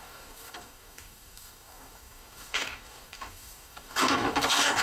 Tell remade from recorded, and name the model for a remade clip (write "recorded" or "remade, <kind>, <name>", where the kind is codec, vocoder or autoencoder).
remade, codec, DAC